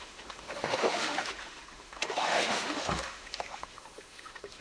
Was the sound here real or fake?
fake